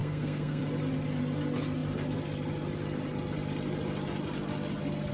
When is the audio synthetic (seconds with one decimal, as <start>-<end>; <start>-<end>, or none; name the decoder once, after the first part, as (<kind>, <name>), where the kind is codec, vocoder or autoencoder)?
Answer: 0.0-0.6 (codec, SNAC)